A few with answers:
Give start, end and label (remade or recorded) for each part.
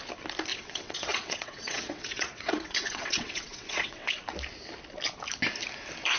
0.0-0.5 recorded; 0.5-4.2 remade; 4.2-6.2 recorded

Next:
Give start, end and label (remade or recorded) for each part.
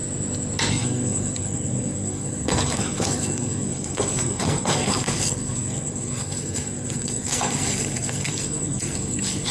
0.0-0.7 recorded; 0.7-9.5 remade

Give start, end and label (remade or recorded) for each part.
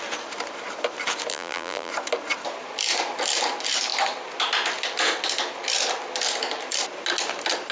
0.0-1.3 recorded; 1.3-1.9 remade; 1.9-7.7 recorded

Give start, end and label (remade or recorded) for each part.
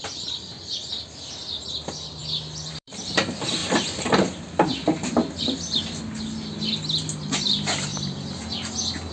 0.0-2.2 remade; 2.2-2.7 recorded; 2.7-3.6 remade; 3.6-5.4 recorded; 5.4-7.9 remade; 7.9-9.1 recorded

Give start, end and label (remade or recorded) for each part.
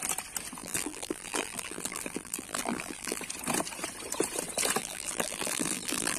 0.0-0.6 recorded; 0.6-3.2 remade; 3.2-4.8 recorded; 4.8-6.2 remade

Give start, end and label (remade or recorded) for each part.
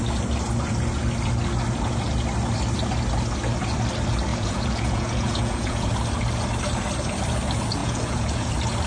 0.0-4.3 recorded; 4.3-5.9 remade; 5.9-7.8 recorded; 7.8-8.5 remade; 8.5-8.9 recorded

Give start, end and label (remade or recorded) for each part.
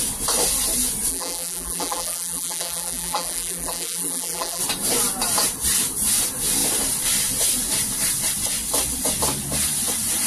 0.0-1.1 recorded; 1.1-4.6 remade; 4.6-10.3 recorded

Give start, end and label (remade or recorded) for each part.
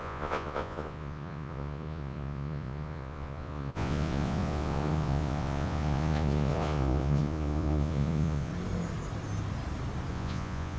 0.0-8.5 remade; 8.5-10.1 recorded; 10.1-10.8 remade